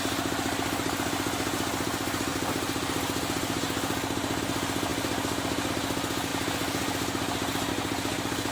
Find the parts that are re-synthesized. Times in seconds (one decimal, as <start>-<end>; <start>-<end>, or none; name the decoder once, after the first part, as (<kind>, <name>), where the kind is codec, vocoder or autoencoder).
none